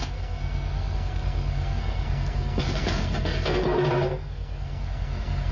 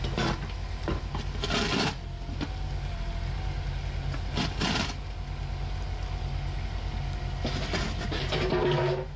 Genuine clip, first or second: second